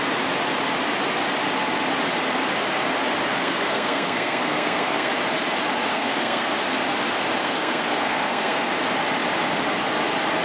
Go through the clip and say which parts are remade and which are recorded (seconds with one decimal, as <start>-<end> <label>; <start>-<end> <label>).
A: 0.0-3.3 recorded; 3.3-5.1 remade; 5.1-5.9 recorded; 5.9-6.5 remade; 6.5-7.4 recorded; 7.4-8.7 remade; 8.7-10.4 recorded